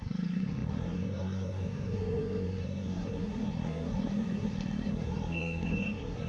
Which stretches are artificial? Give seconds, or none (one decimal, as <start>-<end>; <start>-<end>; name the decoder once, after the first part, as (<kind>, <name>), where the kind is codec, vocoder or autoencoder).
0.0-6.3 (codec, SNAC)